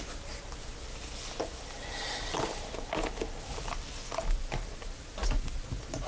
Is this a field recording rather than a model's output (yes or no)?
yes